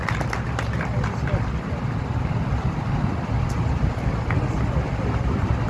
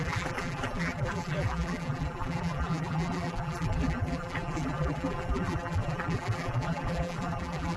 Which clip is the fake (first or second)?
second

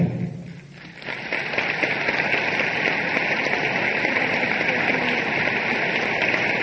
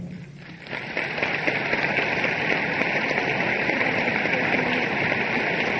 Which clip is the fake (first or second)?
second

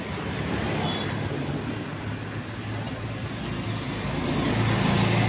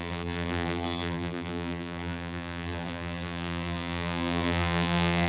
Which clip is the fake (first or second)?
second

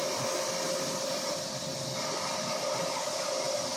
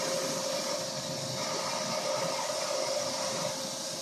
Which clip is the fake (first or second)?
first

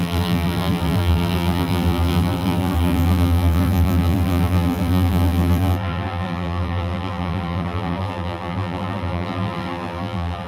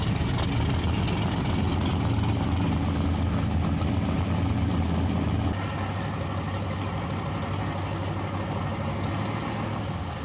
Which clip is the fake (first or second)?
first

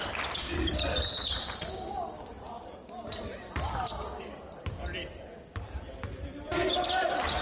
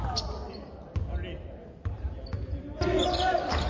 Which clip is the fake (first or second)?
first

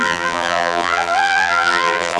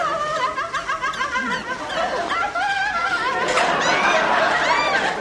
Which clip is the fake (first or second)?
first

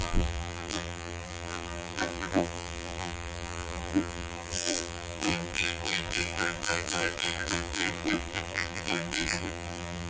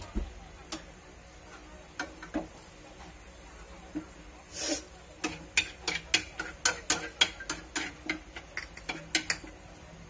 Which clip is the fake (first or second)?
first